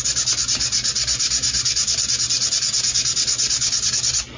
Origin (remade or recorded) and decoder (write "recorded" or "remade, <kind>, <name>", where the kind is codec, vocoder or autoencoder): recorded